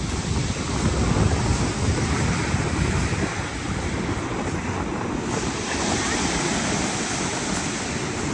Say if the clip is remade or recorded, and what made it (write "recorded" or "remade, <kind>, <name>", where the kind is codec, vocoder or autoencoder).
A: recorded